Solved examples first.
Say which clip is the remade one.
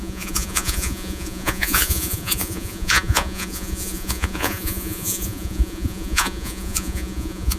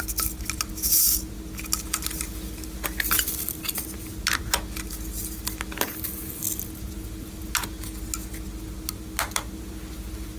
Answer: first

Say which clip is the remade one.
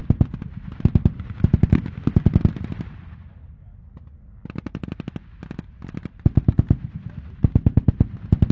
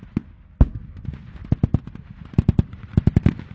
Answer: first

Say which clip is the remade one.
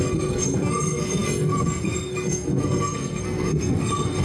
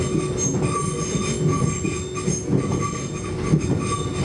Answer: first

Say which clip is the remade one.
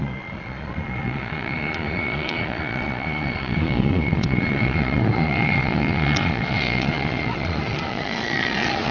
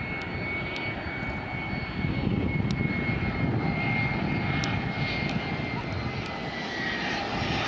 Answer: first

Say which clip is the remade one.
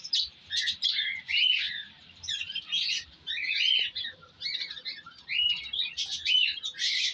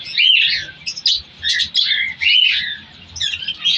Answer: first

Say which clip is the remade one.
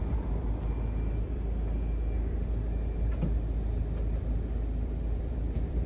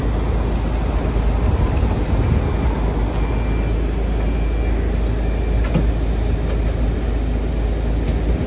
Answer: first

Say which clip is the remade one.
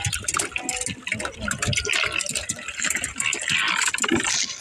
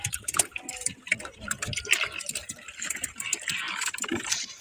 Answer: second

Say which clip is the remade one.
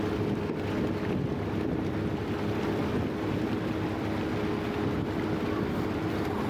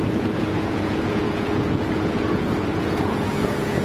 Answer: second